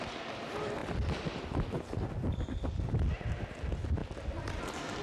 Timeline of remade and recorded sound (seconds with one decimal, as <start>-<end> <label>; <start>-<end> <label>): 0.0-5.0 recorded